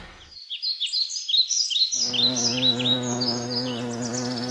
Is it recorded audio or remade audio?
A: recorded